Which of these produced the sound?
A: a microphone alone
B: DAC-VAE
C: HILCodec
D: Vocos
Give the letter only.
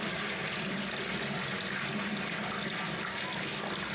A